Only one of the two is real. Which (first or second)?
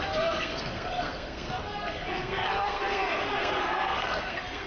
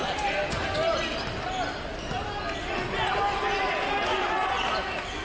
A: second